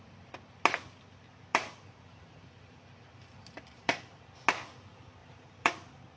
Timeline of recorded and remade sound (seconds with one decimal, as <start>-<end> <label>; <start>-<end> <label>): 0.0-1.5 recorded; 1.5-4.3 remade; 4.3-5.2 recorded; 5.2-5.7 remade; 5.7-6.2 recorded